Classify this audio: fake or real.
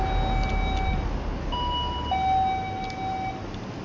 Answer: real